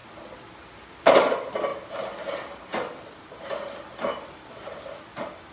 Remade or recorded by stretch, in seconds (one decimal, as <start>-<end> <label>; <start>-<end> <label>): 0.0-5.5 recorded